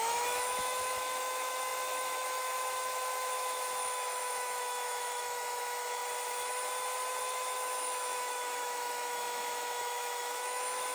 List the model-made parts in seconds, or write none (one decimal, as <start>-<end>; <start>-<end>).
0.0-6.0; 7.2-10.9